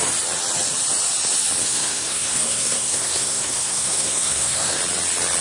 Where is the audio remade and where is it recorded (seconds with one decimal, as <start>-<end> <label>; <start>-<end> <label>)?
0.0-1.6 recorded; 1.6-4.8 remade; 4.8-5.4 recorded